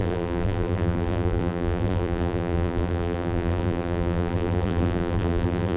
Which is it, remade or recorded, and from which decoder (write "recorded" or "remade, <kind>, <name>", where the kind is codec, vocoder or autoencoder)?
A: remade, vocoder, BigVGAN v2